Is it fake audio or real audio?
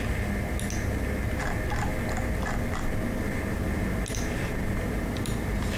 real